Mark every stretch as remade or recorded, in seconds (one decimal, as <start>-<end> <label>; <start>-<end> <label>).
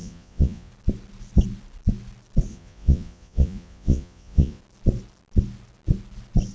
0.0-0.7 remade; 0.7-2.5 recorded; 2.5-4.6 remade; 4.6-6.5 recorded